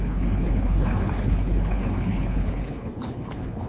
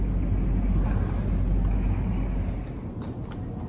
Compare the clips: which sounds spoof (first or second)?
first